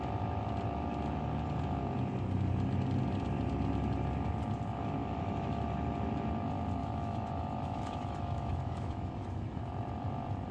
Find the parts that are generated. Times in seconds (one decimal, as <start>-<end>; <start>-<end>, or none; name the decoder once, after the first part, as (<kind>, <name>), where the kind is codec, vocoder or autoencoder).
5.0-5.6 (autoencoder, DAC-VAE); 6.8-9.6